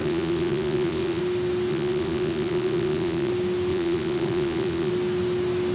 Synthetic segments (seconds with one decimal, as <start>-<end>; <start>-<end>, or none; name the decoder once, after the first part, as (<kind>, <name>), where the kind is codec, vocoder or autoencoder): 0.0-1.2 (vocoder, Vocos); 1.7-3.3; 3.7-4.9